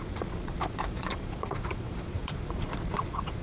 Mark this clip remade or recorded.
remade